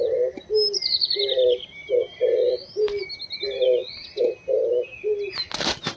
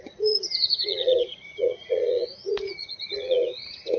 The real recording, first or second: first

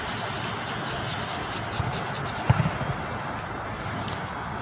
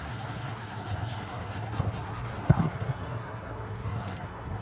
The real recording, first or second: first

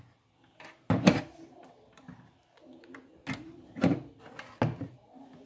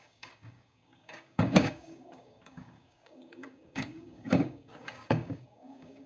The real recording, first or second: first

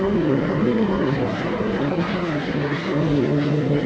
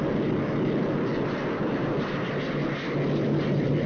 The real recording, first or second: second